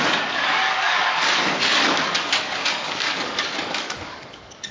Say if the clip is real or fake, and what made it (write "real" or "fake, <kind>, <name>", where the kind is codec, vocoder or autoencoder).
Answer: fake, codec, DAC